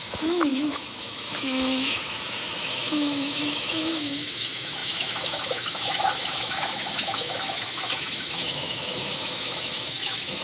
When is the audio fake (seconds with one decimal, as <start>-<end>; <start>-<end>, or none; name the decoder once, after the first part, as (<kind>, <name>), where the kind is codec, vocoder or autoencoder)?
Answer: 0.0-10.4 (autoencoder, DAC-VAE)